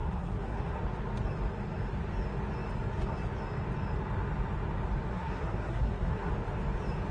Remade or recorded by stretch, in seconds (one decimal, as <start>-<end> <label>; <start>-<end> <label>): 0.0-0.8 remade; 0.8-5.1 recorded; 5.1-6.3 remade; 6.3-7.1 recorded